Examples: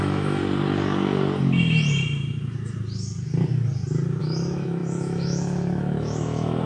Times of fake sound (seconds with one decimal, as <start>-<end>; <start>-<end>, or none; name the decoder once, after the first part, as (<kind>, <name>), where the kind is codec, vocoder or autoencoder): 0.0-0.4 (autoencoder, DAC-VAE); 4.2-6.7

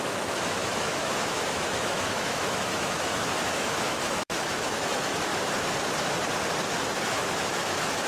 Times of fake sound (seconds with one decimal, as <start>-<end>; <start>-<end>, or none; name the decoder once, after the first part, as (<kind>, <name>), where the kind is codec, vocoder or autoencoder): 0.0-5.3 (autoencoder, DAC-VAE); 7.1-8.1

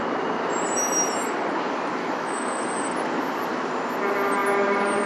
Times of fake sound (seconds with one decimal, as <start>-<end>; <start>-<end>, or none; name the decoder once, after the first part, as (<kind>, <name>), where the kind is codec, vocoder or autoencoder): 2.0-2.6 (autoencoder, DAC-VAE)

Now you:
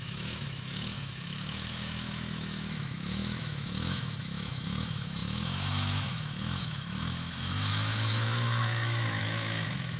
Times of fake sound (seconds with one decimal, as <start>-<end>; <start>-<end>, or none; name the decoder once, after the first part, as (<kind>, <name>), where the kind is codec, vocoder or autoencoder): 0.0-10.0 (autoencoder, DAC-VAE)

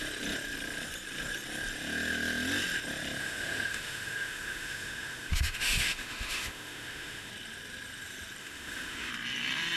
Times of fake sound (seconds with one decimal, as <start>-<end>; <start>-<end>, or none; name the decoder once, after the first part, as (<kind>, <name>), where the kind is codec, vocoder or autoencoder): 3.2-7.3 (autoencoder, DAC-VAE); 8.4-9.1